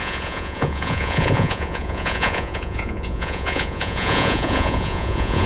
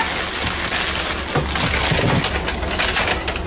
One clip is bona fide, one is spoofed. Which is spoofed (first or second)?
first